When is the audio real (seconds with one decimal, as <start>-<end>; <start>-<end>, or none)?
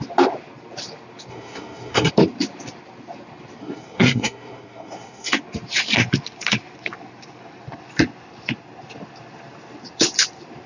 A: 0.0-1.3; 2.1-3.6; 5.3-10.7